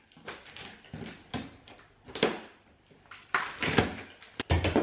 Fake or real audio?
real